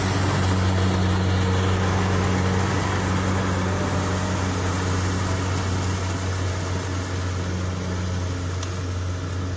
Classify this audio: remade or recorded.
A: recorded